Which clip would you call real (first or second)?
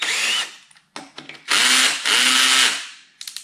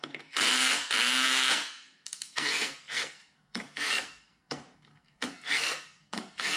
first